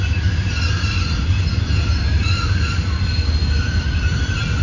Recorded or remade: recorded